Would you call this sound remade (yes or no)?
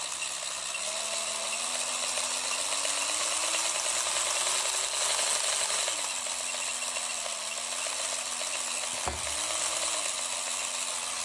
no